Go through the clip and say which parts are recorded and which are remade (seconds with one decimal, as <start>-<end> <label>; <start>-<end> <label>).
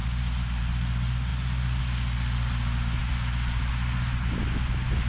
0.0-1.3 recorded; 1.3-1.8 remade; 1.8-3.0 recorded; 3.0-3.7 remade; 3.7-5.1 recorded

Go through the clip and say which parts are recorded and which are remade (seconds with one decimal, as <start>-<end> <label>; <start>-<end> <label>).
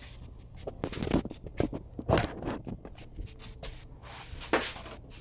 0.0-5.2 recorded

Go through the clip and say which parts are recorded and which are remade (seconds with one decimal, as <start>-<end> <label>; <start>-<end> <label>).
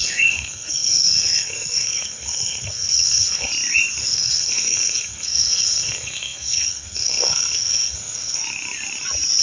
0.0-3.5 remade; 3.5-4.0 recorded; 4.0-8.4 remade; 8.4-9.4 recorded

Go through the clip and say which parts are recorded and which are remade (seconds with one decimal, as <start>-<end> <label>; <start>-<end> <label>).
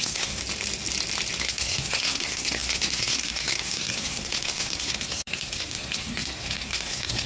0.0-0.4 remade; 0.4-1.4 recorded; 1.4-7.3 remade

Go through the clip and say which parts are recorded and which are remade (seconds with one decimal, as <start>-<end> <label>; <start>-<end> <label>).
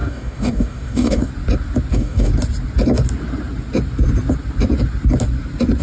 0.0-1.3 remade; 1.3-1.9 recorded; 1.9-2.3 remade; 2.3-5.8 recorded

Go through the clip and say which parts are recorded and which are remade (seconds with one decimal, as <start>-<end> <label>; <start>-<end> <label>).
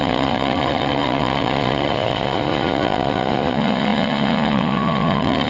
0.0-5.5 remade